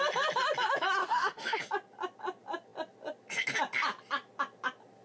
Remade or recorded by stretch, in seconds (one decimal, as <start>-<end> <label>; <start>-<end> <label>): 0.0-1.0 recorded; 1.0-1.6 remade; 1.6-5.0 recorded